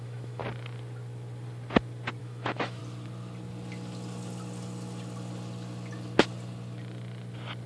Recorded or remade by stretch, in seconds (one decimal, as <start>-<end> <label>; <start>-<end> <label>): 0.0-0.4 remade; 0.4-2.2 recorded; 2.2-2.8 remade; 2.8-7.7 recorded